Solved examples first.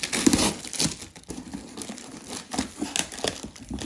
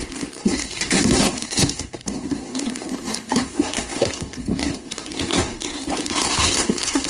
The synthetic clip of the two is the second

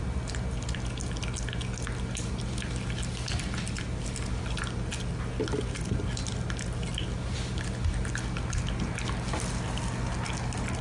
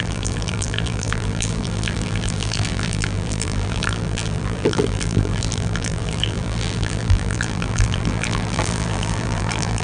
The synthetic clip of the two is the second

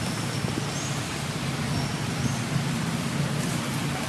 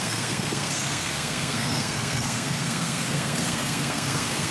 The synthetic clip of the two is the second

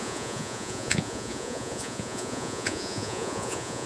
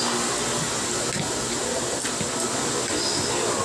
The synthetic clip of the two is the first